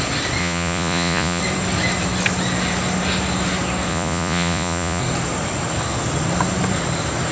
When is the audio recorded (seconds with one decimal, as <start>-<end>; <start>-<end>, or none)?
0.0-0.4; 1.4-3.9; 5.0-7.3